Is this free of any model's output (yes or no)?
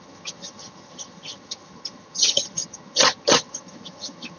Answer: no